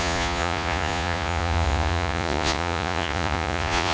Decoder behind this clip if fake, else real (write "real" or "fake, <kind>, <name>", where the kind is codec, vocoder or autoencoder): fake, vocoder, Vocos